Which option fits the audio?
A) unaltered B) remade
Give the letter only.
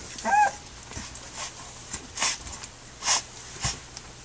A